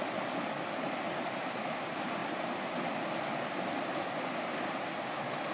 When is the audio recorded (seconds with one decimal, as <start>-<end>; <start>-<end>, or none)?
0.0-5.5